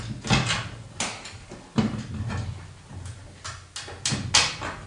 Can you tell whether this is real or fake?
real